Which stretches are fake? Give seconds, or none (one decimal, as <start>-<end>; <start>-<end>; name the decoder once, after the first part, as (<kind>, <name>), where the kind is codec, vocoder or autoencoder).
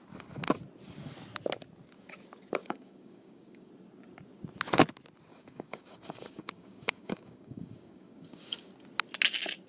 2.6-3.7 (codec, DAC); 5.3-8.7